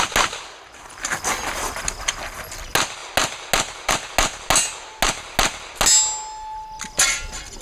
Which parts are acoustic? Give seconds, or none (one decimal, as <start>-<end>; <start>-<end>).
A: 0.0-7.6

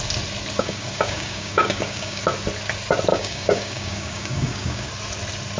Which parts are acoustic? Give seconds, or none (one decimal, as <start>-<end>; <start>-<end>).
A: 0.0-0.6; 2.2-3.1; 4.9-5.6

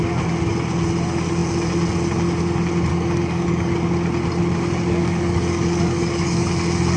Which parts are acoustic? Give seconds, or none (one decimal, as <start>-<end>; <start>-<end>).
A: 0.0-2.9; 3.7-5.0; 6.5-7.0

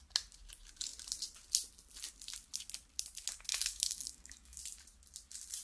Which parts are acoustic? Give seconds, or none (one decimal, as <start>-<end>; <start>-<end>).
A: 0.0-3.5; 4.6-5.6

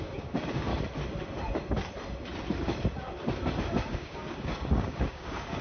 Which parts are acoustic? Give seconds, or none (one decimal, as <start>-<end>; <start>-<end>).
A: 0.7-3.8

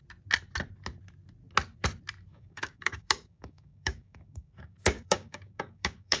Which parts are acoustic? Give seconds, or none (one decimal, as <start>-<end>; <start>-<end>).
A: 0.0-2.3